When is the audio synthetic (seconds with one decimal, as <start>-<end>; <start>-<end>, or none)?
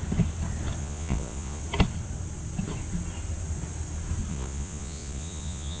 0.8-1.6; 4.3-5.8